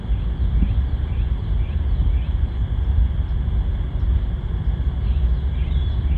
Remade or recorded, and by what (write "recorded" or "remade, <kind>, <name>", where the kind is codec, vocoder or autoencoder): recorded